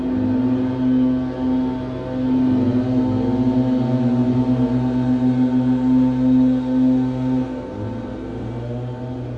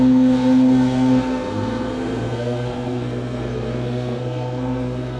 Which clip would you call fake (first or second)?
second